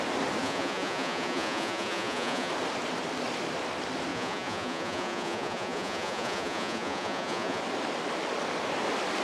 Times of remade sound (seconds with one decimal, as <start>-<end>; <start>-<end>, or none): 0.4-2.5; 4.1-7.6

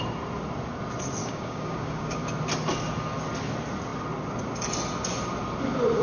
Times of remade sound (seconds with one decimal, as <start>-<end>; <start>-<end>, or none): 1.2-2.2

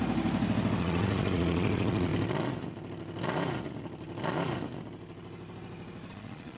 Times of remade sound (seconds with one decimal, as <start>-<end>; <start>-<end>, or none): 0.8-2.1; 6.1-6.6

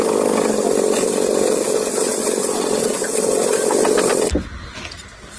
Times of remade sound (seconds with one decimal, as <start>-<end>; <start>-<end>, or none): none

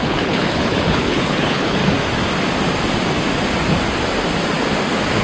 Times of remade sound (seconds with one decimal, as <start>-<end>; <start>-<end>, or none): 0.0-1.8

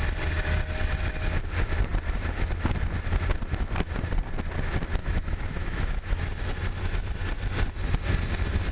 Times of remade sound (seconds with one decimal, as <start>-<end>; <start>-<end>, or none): 5.0-6.2

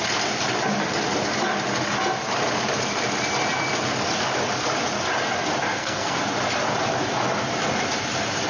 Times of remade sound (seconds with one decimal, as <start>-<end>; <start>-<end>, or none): 5.7-6.2

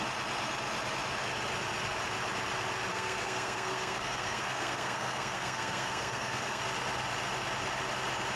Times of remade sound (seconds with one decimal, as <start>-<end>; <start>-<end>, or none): 2.9-6.6